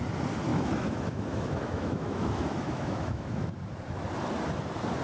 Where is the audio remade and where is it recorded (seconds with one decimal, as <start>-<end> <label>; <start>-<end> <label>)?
0.0-0.5 recorded; 0.5-3.5 remade; 3.5-5.0 recorded